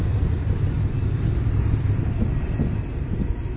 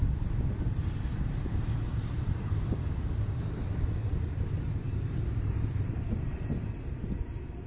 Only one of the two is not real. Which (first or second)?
second